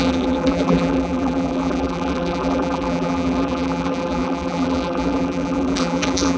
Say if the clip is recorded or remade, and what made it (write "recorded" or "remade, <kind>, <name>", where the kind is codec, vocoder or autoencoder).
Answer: remade, vocoder, BigVGAN v2